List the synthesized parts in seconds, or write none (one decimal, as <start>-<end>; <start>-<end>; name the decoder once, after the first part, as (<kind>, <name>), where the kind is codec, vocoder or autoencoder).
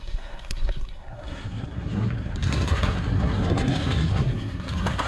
0.0-5.1 (codec, SNAC)